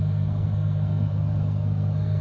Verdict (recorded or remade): remade